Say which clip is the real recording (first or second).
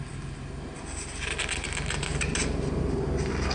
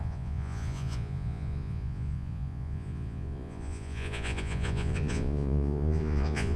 first